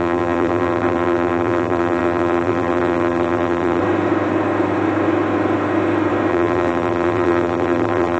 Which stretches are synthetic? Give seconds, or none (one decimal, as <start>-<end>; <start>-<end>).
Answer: 0.0-3.8; 6.3-8.2